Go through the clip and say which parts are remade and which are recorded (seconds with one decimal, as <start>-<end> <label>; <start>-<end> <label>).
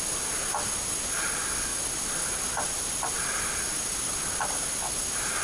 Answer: 0.0-5.4 recorded